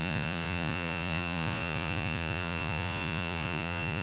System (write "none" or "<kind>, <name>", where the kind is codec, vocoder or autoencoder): vocoder, Vocos